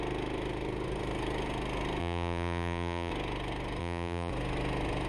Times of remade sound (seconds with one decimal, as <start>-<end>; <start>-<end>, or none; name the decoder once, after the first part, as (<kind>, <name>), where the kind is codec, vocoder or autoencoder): 2.0-3.1 (vocoder, BigVGAN v2); 3.8-4.3